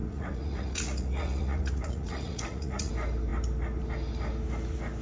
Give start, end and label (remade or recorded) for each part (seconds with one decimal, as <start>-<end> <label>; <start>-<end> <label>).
0.0-2.9 remade; 2.9-5.0 recorded